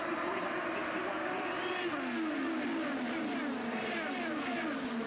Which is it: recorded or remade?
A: recorded